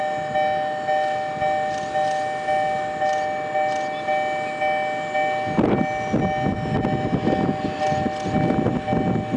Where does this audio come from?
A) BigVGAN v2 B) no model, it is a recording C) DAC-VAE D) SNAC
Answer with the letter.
B